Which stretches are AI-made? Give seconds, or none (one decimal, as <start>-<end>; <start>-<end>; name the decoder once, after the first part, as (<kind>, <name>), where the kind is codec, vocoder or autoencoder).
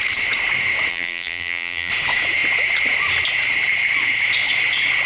0.9-1.9 (vocoder, BigVGAN v2)